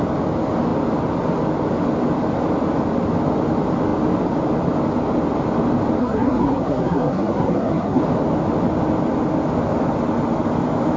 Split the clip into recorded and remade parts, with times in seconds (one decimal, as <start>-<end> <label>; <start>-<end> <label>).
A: 0.0-6.0 recorded; 6.0-8.0 remade; 8.0-11.0 recorded